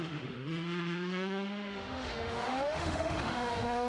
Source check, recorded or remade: remade